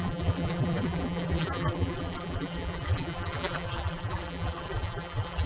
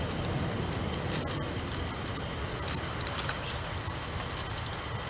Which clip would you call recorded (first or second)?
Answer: second